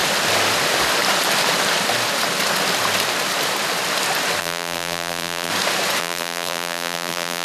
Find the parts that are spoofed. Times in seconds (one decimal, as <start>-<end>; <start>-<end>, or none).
4.4-5.5; 6.0-7.4